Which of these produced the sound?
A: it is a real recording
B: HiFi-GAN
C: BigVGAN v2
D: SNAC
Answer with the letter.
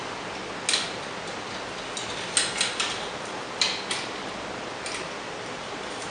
A